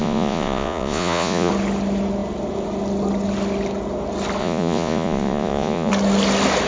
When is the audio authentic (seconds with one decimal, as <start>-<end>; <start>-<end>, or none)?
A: 1.5-4.4; 5.9-6.7

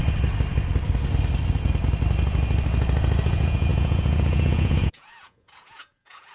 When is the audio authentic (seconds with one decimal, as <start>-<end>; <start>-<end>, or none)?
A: 0.0-3.3

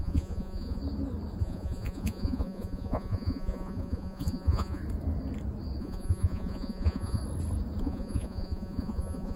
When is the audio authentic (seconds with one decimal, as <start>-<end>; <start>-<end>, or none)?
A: 0.8-1.4; 4.8-5.8; 7.2-7.8

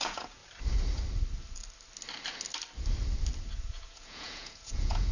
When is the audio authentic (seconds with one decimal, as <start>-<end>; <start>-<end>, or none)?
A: 0.4-3.5

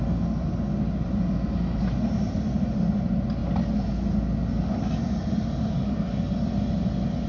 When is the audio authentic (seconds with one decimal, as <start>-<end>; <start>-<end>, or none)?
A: 0.0-7.3

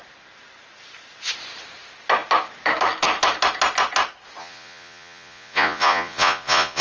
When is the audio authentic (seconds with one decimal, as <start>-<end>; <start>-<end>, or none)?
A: 0.0-4.4

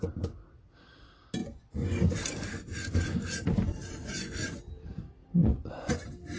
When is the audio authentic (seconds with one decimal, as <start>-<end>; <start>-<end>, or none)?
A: 0.0-1.4; 2.0-4.0; 4.7-5.4; 5.9-6.4

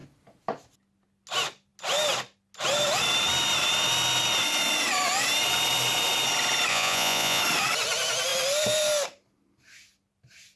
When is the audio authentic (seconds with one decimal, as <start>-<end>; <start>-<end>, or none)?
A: 0.0-6.7; 7.4-10.6